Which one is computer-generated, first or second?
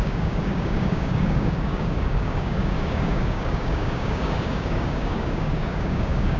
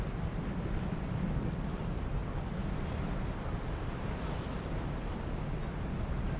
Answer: first